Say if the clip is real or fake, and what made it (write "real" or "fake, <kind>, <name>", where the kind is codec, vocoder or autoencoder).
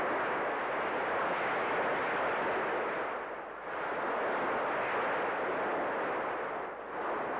real